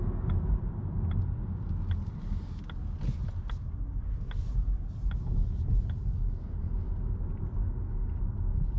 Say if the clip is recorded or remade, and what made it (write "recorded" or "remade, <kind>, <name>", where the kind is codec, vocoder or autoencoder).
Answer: recorded